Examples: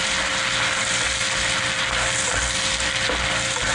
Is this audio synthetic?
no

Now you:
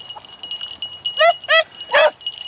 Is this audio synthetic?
no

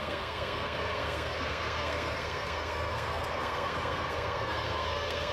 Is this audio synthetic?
yes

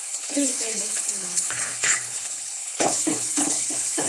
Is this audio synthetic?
yes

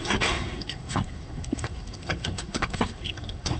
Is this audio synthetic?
yes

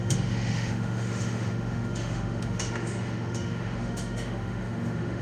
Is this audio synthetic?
yes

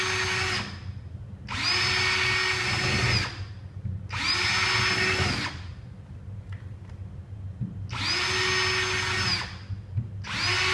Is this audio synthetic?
no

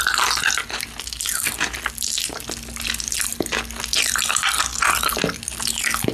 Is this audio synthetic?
no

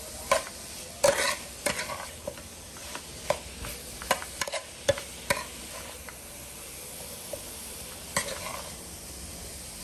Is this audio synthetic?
no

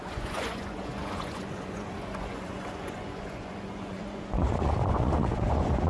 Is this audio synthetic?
yes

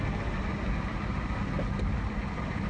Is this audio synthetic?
no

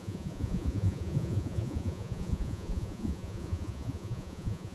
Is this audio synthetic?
yes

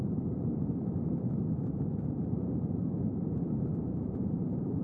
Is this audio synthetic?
yes